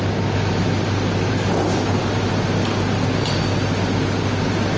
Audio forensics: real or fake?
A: real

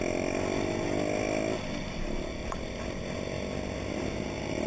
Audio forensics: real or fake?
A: real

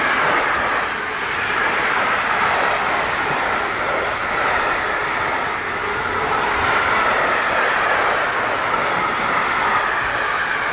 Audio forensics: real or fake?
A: real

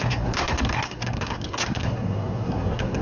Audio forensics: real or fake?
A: fake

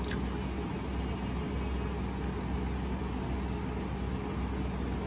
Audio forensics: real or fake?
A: real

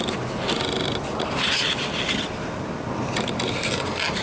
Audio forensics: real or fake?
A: real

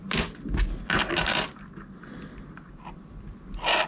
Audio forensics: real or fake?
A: real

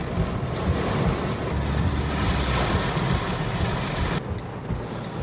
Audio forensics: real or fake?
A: real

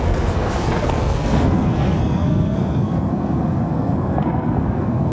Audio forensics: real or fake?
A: fake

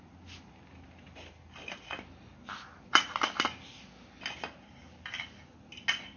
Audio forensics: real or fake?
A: real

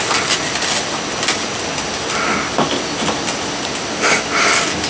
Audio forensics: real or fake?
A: real